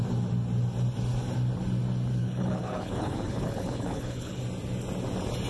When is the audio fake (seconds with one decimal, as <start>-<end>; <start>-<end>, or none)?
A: 2.2-4.4

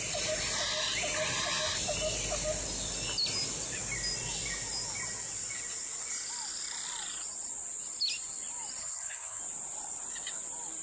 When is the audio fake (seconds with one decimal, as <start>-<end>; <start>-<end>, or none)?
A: 8.8-9.4

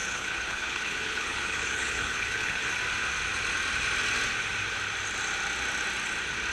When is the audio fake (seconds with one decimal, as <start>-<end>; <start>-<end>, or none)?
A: 0.0-2.7

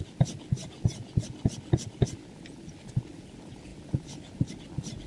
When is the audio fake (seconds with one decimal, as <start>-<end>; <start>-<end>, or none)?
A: none

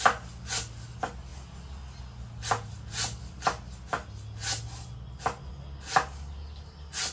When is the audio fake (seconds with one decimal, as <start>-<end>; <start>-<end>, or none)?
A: none

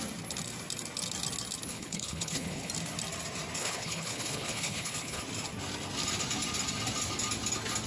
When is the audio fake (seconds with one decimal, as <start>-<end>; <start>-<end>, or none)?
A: 1.7-2.7; 3.6-5.2

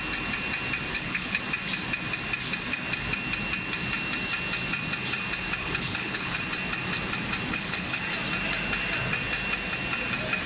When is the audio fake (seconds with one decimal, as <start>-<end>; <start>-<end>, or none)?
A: 0.9-1.4; 5.6-6.4; 7.5-8.0